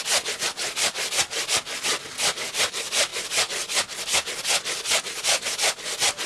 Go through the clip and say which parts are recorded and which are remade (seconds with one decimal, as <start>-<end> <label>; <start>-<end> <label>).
0.0-6.3 recorded